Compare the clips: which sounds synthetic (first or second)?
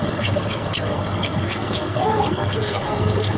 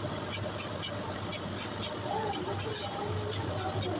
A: first